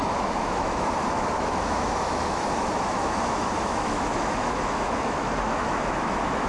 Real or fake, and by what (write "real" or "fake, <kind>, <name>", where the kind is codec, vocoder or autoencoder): fake, autoencoder, DAC-VAE